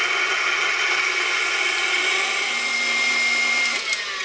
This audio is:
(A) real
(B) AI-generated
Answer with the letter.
A